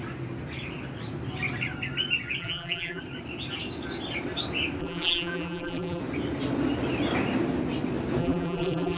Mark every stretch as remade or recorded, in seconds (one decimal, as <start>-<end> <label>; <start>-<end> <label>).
0.0-2.4 recorded; 2.4-3.0 remade; 3.0-4.8 recorded; 4.8-6.0 remade; 6.0-8.2 recorded; 8.2-9.0 remade